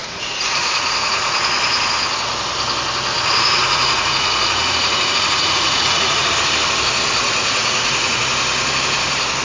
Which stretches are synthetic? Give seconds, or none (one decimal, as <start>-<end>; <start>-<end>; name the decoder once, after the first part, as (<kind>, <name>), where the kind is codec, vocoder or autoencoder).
0.0-1.4 (vocoder, Vocos); 3.1-6.3; 7.4-8.2